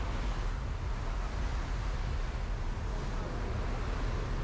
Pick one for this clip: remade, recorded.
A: recorded